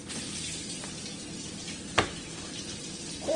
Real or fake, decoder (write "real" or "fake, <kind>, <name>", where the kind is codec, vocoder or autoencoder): fake, vocoder, BigVGAN v2